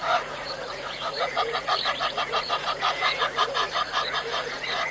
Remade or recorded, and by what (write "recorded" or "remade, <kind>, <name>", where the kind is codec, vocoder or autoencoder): remade, vocoder, Vocos